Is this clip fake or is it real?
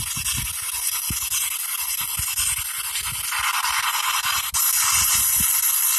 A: real